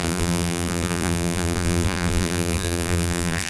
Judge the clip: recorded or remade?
remade